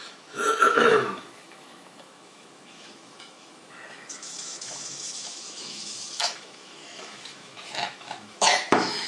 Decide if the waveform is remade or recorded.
remade